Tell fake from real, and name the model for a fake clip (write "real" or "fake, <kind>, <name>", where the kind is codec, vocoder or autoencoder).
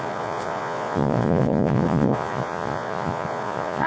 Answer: fake, vocoder, Vocos